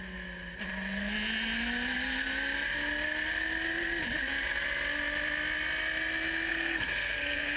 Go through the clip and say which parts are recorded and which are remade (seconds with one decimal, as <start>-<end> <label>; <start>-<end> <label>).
0.0-6.5 recorded; 6.5-7.6 remade